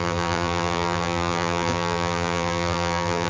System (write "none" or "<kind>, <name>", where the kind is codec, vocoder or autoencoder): vocoder, BigVGAN v2